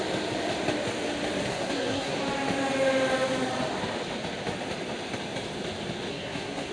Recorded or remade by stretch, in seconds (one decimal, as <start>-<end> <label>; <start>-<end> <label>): 0.0-1.5 recorded; 1.5-2.2 remade; 2.2-6.1 recorded; 6.1-6.7 remade